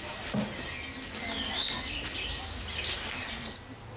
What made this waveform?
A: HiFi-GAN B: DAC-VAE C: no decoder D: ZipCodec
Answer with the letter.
C